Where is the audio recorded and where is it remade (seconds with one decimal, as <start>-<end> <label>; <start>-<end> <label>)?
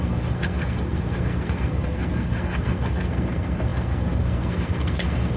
0.0-5.4 remade